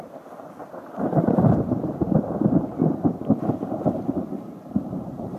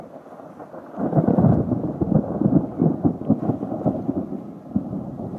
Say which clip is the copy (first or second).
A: first